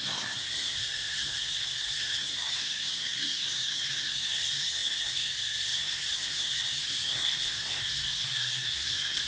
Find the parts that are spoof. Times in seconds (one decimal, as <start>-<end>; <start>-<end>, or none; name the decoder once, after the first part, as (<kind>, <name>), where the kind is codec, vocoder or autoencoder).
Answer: 0.0-9.3 (codec, SNAC)